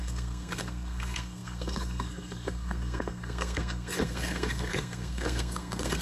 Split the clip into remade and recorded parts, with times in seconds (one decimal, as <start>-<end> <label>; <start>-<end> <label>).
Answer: 0.0-6.0 remade